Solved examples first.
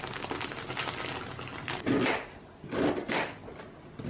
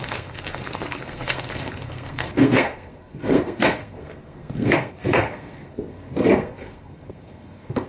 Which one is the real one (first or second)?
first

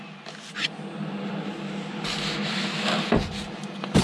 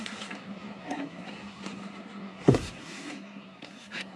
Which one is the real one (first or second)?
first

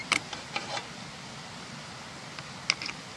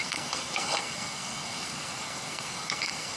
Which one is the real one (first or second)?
first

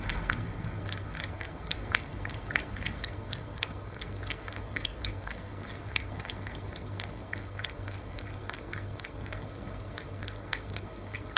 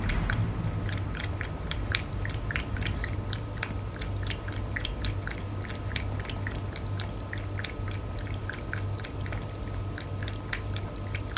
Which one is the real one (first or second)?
second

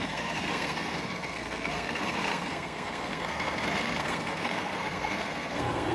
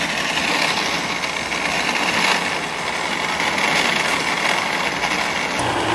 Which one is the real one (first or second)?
second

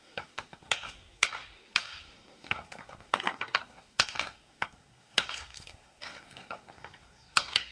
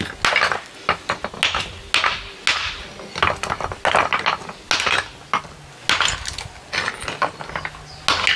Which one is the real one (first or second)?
second